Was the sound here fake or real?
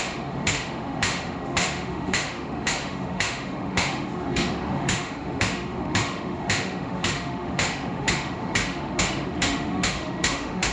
fake